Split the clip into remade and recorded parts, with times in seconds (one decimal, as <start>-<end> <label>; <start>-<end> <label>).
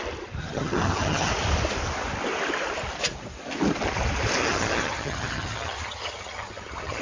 0.0-0.4 recorded; 0.4-1.3 remade; 1.3-4.4 recorded; 4.4-7.0 remade